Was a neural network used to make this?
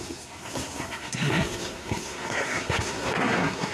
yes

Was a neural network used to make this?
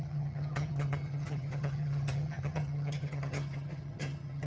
yes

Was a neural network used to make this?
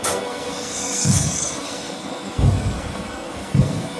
yes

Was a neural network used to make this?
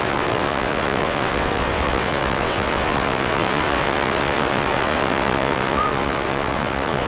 yes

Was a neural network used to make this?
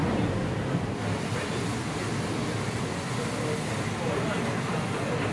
no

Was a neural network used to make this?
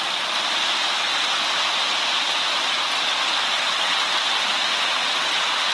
no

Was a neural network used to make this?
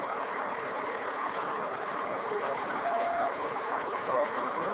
yes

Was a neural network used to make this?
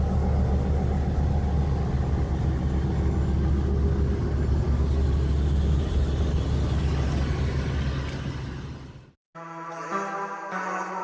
no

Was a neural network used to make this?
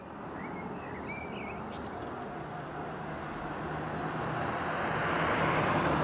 no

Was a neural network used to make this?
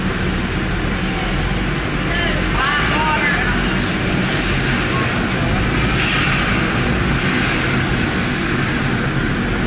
no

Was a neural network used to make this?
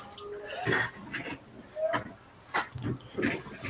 no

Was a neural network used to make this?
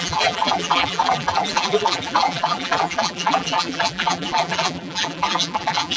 yes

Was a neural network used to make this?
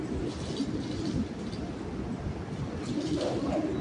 no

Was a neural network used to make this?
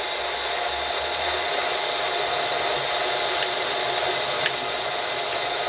no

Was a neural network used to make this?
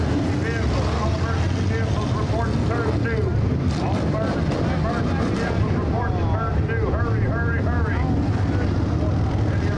no